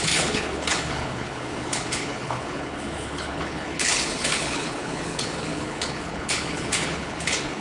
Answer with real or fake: fake